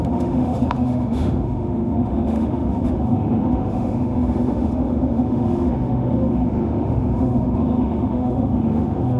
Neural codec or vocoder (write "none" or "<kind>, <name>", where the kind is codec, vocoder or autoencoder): autoencoder, DAC-VAE